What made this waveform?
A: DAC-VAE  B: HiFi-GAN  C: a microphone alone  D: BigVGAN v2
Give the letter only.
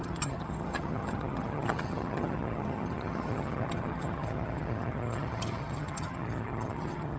B